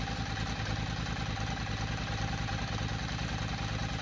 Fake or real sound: real